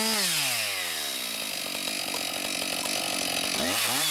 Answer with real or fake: real